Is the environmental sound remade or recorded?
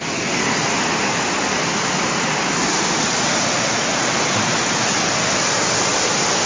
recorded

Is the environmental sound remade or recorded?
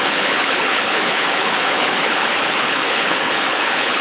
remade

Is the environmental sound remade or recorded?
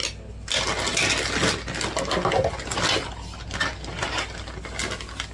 recorded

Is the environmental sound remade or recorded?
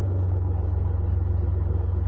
remade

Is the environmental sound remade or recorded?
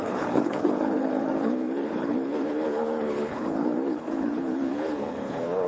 remade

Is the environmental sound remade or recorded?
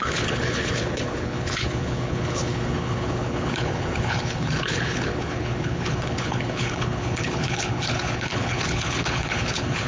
remade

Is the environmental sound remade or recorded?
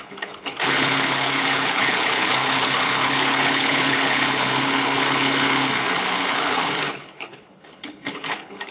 remade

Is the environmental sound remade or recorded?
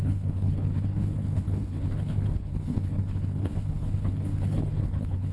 remade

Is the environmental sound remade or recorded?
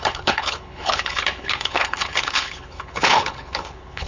remade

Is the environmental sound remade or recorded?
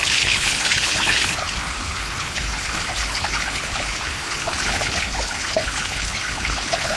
remade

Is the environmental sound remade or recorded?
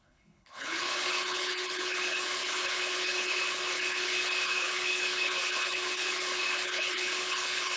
remade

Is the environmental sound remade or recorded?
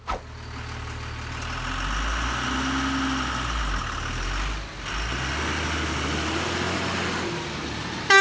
recorded